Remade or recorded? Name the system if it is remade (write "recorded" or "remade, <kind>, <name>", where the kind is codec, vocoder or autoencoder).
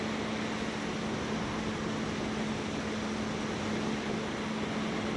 remade, vocoder, BigVGAN v2